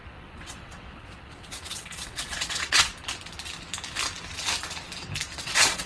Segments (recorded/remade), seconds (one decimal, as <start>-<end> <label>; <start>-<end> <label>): 0.0-2.9 remade; 2.9-5.4 recorded; 5.4-5.9 remade